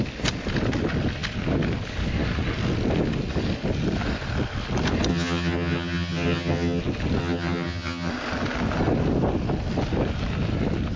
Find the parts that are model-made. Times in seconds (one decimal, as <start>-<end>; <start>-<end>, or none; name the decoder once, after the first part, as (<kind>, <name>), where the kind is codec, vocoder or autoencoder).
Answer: 5.1-6.8 (vocoder, HiFi-GAN); 7.2-8.1